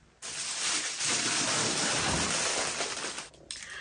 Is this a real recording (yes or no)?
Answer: yes